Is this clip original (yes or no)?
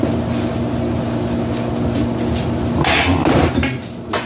yes